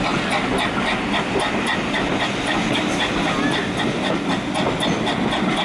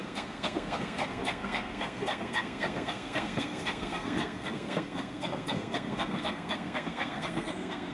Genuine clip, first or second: first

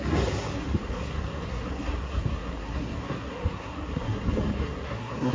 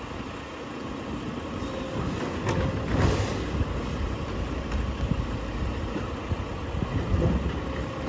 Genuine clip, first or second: second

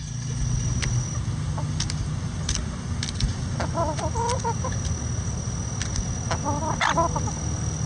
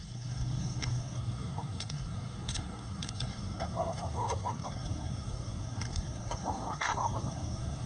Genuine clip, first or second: first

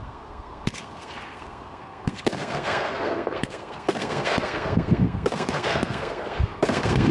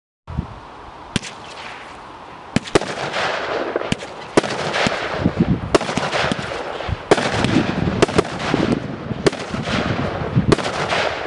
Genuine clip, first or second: second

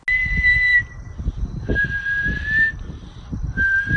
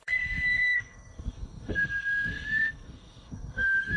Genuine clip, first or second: first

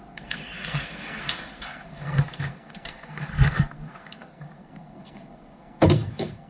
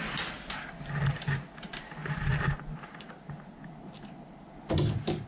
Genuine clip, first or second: second